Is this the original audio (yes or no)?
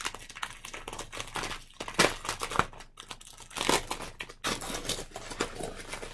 yes